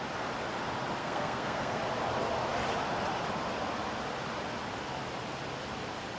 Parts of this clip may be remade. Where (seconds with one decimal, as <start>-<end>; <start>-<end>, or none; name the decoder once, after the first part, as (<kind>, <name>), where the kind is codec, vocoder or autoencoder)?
1.0-1.8 (codec, SNAC)